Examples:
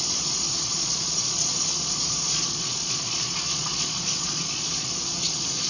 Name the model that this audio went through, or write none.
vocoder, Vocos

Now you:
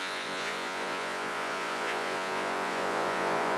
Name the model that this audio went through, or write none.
vocoder, Vocos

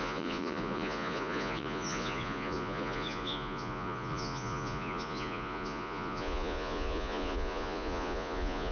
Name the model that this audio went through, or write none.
vocoder, Vocos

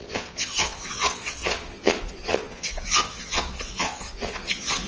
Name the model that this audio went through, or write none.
vocoder, Vocos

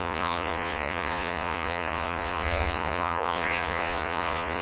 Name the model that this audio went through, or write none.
vocoder, Vocos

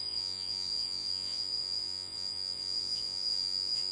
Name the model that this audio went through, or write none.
vocoder, Vocos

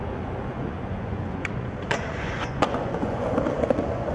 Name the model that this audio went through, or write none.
vocoder, Vocos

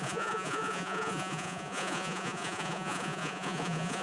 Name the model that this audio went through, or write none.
vocoder, Vocos